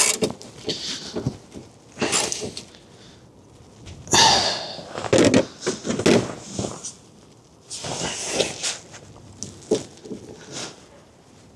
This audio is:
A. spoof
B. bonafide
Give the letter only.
B